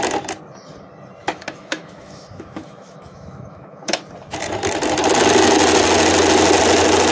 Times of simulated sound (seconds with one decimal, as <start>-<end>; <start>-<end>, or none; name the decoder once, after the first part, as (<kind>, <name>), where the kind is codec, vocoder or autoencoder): 1.2-4.0 (autoencoder, DAC-VAE)